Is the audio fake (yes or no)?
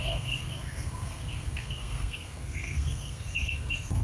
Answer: yes